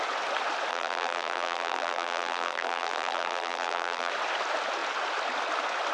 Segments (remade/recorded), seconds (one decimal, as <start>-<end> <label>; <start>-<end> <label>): 0.0-0.7 recorded; 0.7-4.1 remade; 4.1-5.9 recorded